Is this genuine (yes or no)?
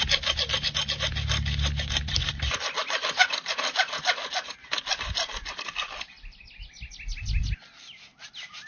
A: yes